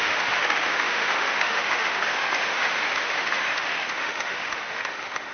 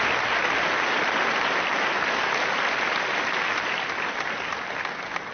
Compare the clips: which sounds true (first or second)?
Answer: second